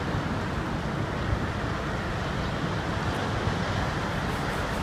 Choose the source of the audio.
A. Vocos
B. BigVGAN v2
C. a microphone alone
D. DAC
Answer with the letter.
C